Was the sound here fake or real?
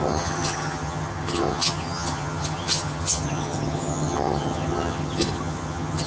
fake